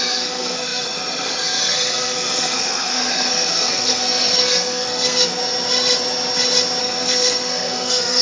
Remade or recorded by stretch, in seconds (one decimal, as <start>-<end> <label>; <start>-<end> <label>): 0.0-5.4 remade; 5.4-6.8 recorded; 6.8-8.2 remade